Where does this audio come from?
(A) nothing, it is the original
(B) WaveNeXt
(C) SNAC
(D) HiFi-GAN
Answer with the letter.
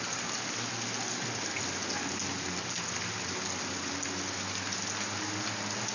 A